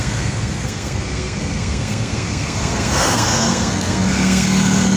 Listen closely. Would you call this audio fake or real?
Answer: fake